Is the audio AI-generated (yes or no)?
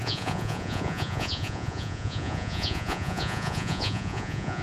yes